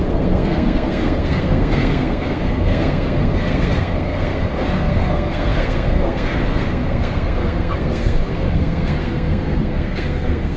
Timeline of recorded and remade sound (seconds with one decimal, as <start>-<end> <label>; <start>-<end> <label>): 0.0-10.6 remade